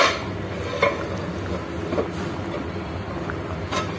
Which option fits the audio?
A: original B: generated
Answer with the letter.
A